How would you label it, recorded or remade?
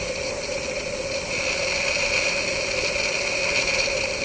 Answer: remade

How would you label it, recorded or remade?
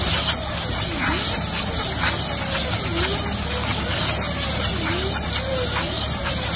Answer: recorded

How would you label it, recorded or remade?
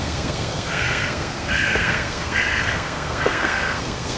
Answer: remade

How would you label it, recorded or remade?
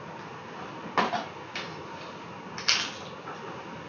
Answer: recorded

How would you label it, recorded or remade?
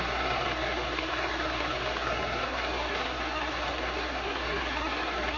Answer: remade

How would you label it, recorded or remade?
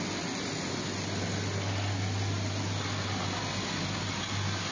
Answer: recorded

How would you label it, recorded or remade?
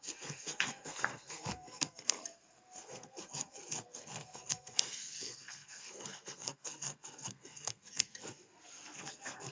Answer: remade